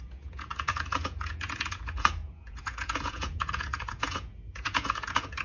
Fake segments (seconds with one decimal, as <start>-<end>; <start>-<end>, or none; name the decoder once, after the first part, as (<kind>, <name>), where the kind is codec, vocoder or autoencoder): 0.0-5.4 (vocoder, Vocos)

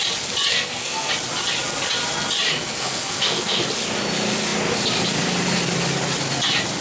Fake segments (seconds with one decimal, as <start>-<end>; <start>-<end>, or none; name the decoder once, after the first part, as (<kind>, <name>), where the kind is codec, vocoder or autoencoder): 0.5-1.1 (codec, SNAC); 2.5-3.7